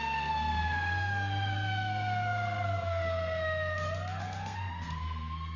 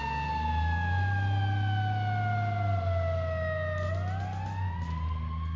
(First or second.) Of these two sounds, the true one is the second